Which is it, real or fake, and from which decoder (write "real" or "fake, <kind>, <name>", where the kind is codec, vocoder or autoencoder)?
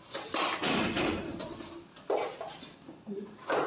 real